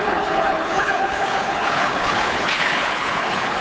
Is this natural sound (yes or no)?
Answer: no